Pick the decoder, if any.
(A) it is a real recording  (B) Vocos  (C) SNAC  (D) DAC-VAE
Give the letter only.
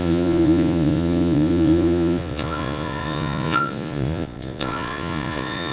B